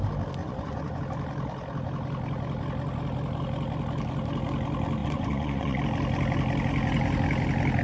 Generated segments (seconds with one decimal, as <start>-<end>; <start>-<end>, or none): 0.4-1.0; 5.0-5.8